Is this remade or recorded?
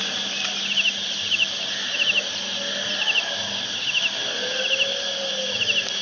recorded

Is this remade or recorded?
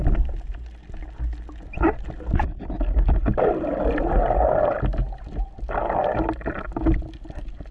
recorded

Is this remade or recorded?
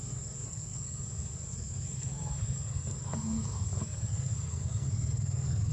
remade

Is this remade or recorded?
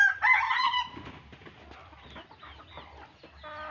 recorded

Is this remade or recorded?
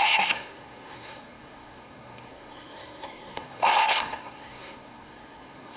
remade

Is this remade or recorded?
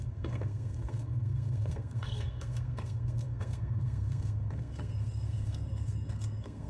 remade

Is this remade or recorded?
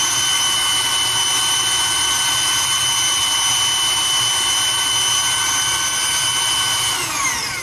recorded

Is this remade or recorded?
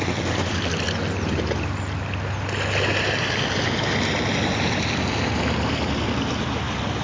recorded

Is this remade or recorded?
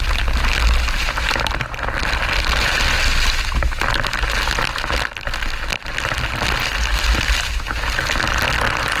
recorded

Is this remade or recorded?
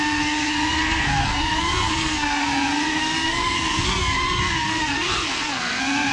remade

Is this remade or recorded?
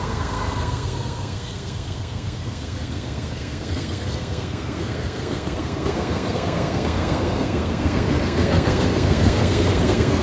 remade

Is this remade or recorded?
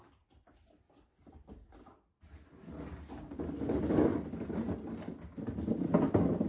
recorded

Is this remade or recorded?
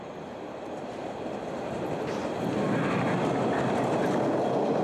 recorded